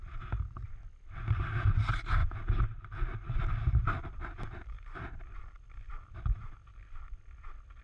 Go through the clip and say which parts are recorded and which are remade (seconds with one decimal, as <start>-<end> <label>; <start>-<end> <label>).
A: 0.0-2.2 recorded; 2.2-5.2 remade; 5.2-7.8 recorded